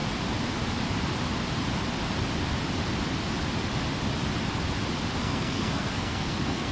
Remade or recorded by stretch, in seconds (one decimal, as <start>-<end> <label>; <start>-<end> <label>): 0.0-5.2 recorded; 5.2-6.7 remade